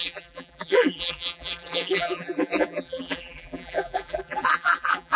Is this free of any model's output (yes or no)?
no